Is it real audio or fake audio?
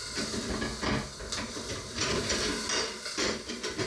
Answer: real